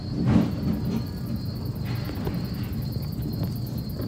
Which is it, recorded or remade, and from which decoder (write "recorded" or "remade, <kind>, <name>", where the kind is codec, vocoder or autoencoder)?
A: recorded